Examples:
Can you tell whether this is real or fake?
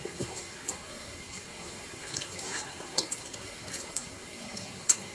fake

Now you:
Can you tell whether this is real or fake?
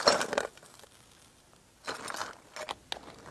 real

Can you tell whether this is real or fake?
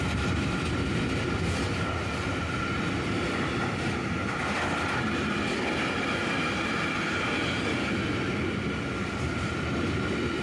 real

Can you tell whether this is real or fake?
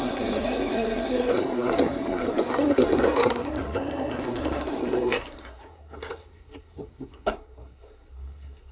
fake